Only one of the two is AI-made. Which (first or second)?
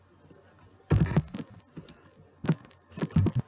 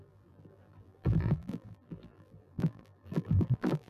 second